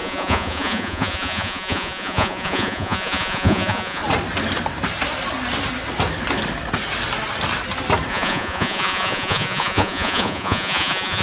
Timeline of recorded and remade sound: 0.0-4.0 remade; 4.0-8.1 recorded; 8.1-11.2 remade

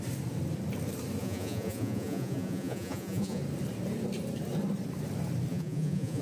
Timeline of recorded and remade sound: 0.0-1.2 recorded; 1.2-3.4 remade; 3.4-5.5 recorded; 5.5-6.2 remade

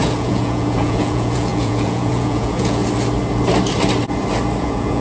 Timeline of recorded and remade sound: 0.0-2.8 remade; 2.8-4.6 recorded; 4.6-5.0 remade

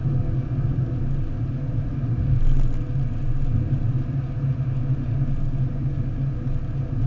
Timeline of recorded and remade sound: 0.0-7.1 recorded

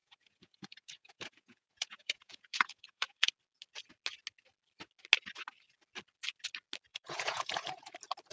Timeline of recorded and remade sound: 0.0-3.3 remade; 3.3-6.9 recorded; 6.9-7.9 remade; 7.9-8.3 recorded

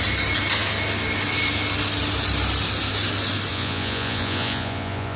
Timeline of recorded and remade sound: 0.0-3.5 recorded; 3.5-5.2 remade

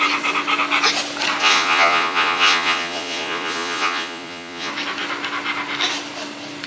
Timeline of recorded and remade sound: 0.0-1.4 recorded; 1.4-4.7 remade; 4.7-6.7 recorded

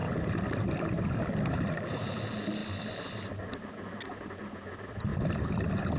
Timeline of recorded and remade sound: 0.0-6.0 recorded